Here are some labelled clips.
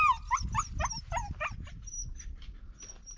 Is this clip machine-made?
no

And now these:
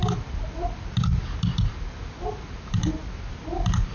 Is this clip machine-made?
no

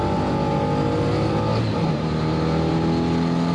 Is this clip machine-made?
no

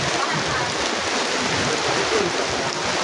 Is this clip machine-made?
no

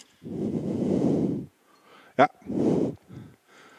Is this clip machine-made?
yes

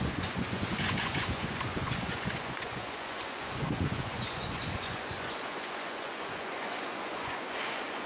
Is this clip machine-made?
yes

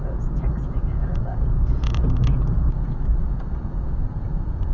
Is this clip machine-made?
yes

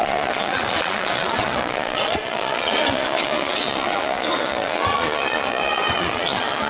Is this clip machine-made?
yes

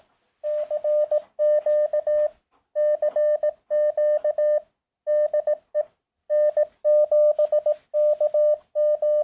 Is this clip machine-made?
no